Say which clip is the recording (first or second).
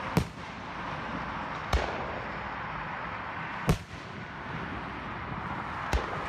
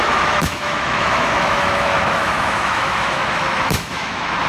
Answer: first